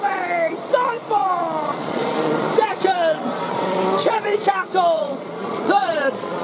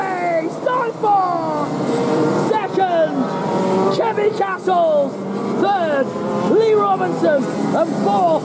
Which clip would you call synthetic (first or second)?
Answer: first